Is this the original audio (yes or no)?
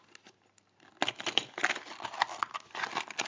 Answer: yes